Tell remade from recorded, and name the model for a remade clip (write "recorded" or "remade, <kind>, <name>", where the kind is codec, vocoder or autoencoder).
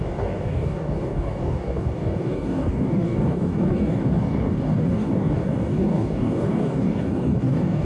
remade, codec, DAC